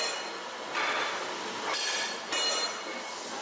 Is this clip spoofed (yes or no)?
no